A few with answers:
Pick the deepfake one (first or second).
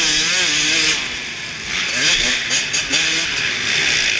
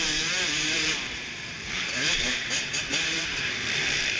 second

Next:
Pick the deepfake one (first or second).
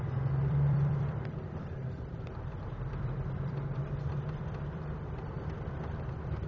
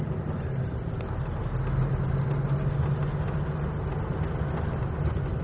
first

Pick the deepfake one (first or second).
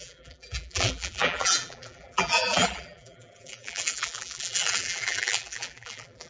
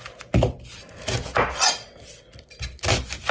first